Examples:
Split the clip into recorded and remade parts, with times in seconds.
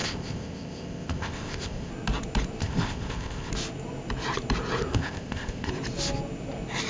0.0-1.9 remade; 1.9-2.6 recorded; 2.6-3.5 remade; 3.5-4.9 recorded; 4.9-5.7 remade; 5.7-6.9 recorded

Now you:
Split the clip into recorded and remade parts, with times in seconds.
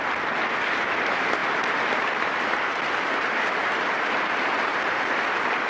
0.0-1.4 recorded; 1.4-4.8 remade; 4.8-5.7 recorded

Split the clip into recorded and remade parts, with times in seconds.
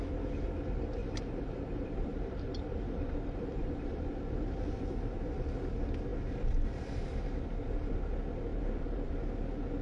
0.0-1.0 recorded; 1.0-5.3 remade; 5.3-8.5 recorded; 8.5-9.1 remade; 9.1-9.8 recorded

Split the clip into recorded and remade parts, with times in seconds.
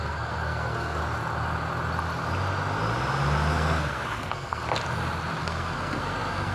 0.0-1.0 remade; 1.0-3.5 recorded; 3.5-4.6 remade; 4.6-5.4 recorded; 5.4-6.5 remade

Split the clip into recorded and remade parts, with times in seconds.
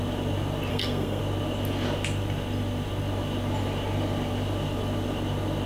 0.0-0.7 recorded; 0.7-1.2 remade; 1.2-5.7 recorded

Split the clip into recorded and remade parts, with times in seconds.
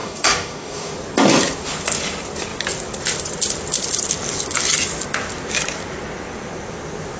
0.0-0.9 remade; 0.9-7.2 recorded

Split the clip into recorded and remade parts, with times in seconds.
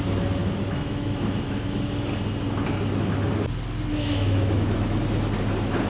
0.0-0.4 recorded; 0.4-2.1 remade; 2.1-3.9 recorded; 3.9-5.0 remade; 5.0-5.9 recorded